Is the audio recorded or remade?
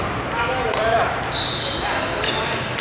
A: recorded